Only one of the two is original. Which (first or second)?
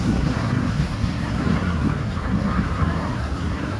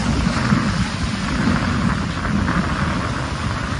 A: second